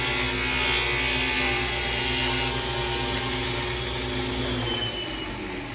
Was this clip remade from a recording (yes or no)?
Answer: no